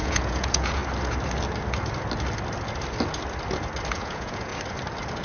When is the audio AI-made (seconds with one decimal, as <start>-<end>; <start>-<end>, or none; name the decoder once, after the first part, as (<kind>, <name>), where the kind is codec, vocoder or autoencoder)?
0.0-0.8 (vocoder, Vocos); 3.9-4.5